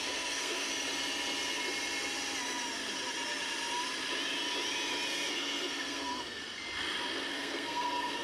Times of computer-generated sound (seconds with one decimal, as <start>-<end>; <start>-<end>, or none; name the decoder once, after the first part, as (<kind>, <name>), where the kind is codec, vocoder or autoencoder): 0.0-0.7 (codec, SNAC); 5.3-6.4; 7.3-8.2

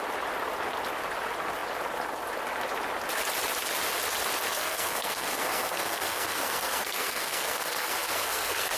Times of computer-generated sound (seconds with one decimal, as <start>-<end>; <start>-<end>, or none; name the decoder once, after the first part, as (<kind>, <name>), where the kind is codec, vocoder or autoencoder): 4.5-8.8 (codec, SNAC)

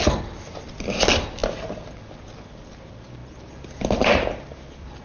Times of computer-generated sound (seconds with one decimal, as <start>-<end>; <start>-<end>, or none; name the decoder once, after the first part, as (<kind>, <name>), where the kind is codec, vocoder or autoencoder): none

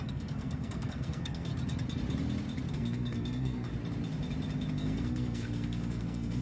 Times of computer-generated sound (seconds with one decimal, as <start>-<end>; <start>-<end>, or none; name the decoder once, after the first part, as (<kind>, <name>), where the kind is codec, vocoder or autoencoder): 0.0-1.5 (codec, SNAC); 2.7-3.7; 4.7-6.4

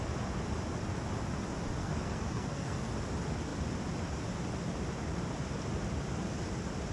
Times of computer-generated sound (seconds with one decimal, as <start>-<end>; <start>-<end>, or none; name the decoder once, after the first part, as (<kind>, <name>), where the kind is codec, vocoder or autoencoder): 1.8-2.9 (codec, SNAC)

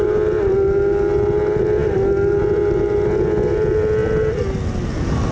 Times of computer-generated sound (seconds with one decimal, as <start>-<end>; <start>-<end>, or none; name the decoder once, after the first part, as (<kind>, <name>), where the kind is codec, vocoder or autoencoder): none

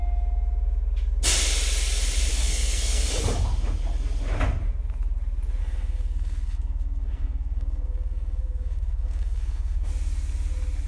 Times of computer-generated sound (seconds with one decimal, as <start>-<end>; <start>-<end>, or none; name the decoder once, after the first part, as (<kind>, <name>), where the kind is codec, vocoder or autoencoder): 2.3-3.2 (codec, SNAC); 5.6-9.9